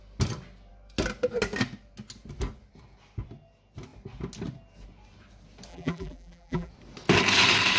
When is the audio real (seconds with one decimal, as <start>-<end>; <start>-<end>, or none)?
0.0-5.7; 6.7-7.8